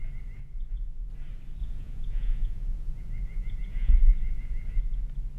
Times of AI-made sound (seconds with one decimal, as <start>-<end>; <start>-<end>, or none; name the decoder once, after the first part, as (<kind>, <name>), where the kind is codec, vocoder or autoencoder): 0.4-1.1 (vocoder, Vocos); 1.6-4.8